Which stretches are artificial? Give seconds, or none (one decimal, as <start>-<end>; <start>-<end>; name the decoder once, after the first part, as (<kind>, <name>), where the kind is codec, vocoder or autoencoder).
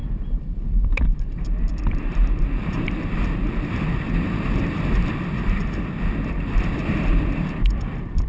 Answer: 0.0-8.3 (vocoder, BigVGAN v2)